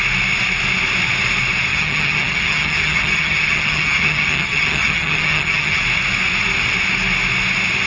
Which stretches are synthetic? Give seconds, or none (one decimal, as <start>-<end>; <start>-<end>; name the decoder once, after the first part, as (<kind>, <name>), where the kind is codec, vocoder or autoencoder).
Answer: 1.7-5.8 (vocoder, HiFi-GAN)